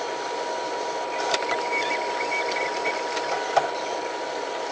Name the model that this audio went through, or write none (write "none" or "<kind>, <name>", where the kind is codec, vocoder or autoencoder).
none